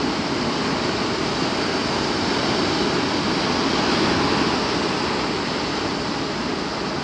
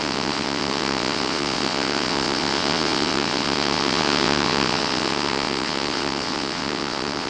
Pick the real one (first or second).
first